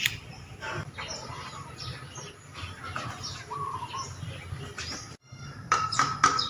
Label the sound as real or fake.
real